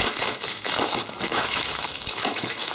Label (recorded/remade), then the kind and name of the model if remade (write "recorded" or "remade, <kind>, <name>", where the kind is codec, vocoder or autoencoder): remade, autoencoder, DAC-VAE